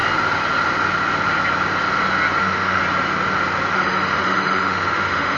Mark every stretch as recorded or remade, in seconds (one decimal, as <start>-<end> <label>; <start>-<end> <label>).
0.0-2.4 recorded; 2.4-2.8 remade; 2.8-3.7 recorded; 3.7-5.4 remade